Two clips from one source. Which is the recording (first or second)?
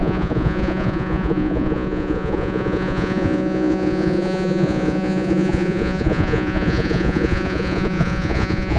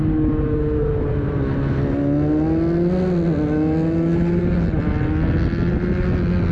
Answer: second